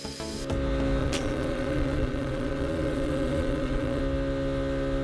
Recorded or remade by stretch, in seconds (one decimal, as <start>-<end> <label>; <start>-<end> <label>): 0.0-1.0 recorded; 1.0-4.0 remade; 4.0-5.0 recorded